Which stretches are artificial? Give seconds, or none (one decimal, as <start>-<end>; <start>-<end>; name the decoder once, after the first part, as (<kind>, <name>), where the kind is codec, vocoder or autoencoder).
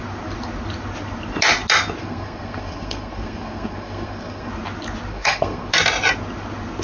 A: 2.0-4.5 (codec, SNAC); 5.1-5.7